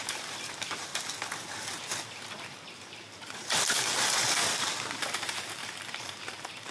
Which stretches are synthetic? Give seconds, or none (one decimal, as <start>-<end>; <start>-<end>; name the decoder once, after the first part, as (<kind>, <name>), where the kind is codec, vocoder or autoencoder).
0.0-0.9 (vocoder, BigVGAN v2); 2.7-4.2; 5.0-6.7